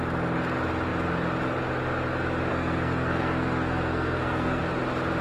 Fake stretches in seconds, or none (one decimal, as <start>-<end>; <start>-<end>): 2.5-4.6